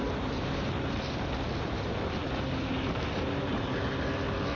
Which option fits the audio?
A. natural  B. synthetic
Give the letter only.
A